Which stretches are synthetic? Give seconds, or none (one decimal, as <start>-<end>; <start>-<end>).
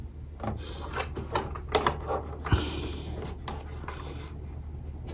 none